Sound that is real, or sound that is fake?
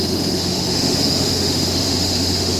fake